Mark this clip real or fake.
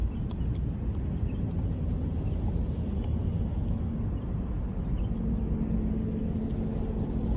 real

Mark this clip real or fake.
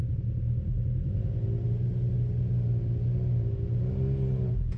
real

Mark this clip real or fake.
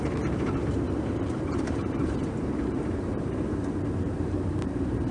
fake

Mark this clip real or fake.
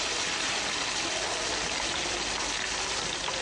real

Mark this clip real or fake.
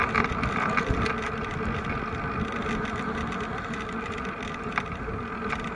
real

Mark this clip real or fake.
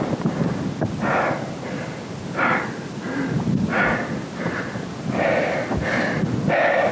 real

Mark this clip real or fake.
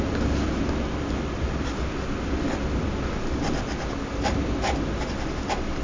real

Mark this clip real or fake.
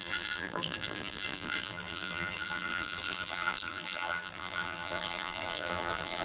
fake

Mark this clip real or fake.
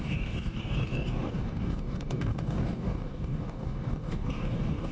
fake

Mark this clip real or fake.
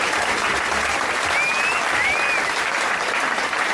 real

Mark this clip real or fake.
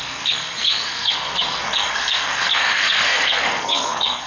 fake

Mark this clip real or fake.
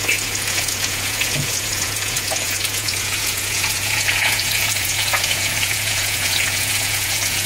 fake